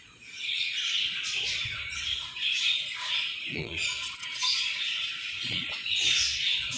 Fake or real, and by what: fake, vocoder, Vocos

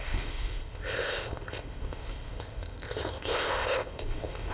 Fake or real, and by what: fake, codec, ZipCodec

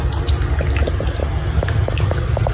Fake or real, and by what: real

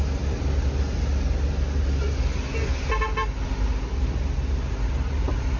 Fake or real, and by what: real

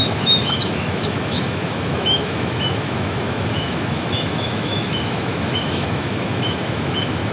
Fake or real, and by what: fake, autoencoder, DAC-VAE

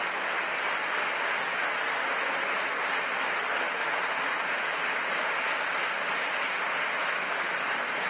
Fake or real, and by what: real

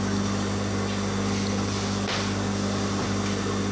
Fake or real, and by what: real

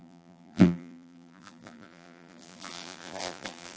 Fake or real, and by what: fake, vocoder, BigVGAN v2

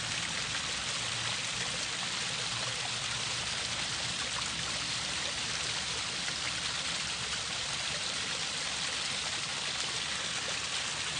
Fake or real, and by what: real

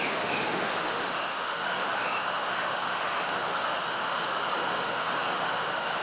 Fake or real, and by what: fake, autoencoder, DAC-VAE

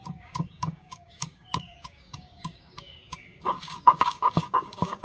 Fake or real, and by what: fake, codec, DAC